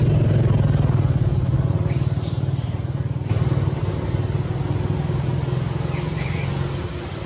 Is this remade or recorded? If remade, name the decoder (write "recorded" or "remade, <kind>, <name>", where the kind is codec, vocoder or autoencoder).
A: recorded